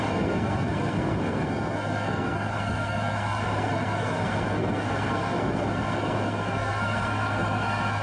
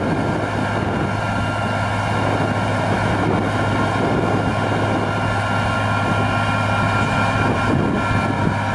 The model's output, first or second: first